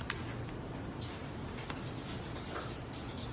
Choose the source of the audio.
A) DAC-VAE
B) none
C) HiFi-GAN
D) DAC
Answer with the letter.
B